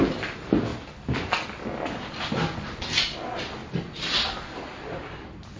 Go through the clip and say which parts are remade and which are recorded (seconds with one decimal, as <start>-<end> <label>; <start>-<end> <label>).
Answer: 0.0-5.6 recorded